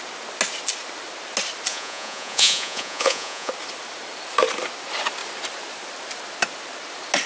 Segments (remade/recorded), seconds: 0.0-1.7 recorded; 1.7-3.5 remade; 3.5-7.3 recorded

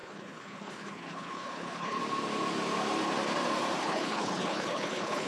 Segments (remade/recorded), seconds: 0.0-2.0 remade; 2.0-3.8 recorded; 3.8-5.3 remade

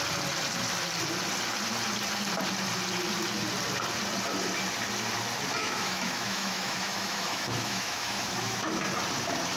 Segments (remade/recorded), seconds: 0.0-5.6 recorded; 5.6-8.8 remade; 8.8-9.6 recorded

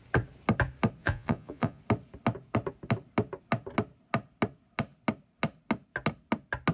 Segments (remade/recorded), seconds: 0.0-1.0 recorded; 1.0-1.8 remade; 1.8-6.7 recorded

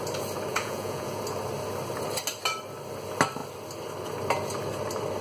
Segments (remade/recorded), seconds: 0.0-0.5 recorded; 0.5-1.2 remade; 1.2-5.2 recorded

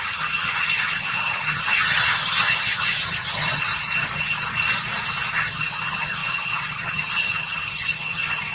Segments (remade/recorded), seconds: 0.0-3.7 remade; 3.7-5.3 recorded; 5.3-8.5 remade

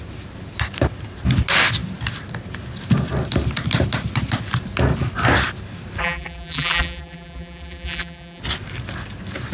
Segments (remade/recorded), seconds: 0.0-6.0 recorded; 6.0-8.4 remade; 8.4-9.5 recorded

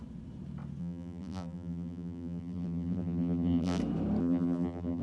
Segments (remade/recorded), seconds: 0.0-0.8 recorded; 0.8-3.8 remade; 3.8-4.2 recorded; 4.2-5.0 remade